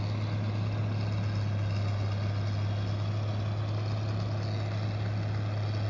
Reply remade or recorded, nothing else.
recorded